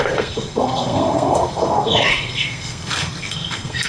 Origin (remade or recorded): remade